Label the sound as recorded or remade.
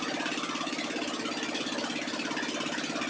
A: recorded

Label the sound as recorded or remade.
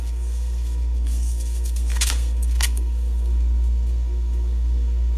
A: remade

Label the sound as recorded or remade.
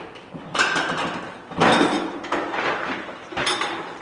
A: recorded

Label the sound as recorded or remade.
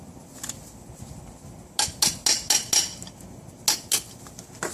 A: recorded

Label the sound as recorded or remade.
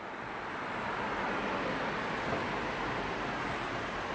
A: recorded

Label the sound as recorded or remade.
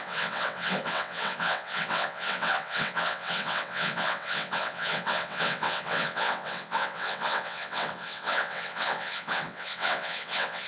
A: remade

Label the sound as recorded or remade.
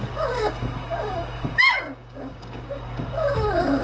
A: remade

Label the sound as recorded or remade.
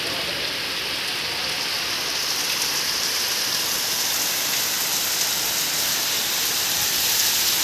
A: recorded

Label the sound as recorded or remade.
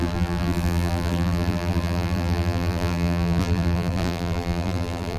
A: remade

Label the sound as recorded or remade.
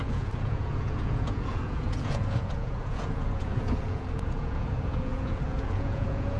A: remade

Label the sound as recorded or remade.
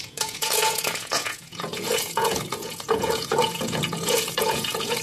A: remade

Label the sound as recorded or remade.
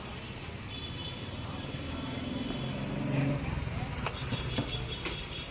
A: recorded